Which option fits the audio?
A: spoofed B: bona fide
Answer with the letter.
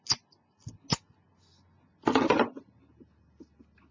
B